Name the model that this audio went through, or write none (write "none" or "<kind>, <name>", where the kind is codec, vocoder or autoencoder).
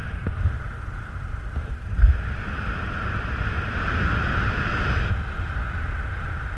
none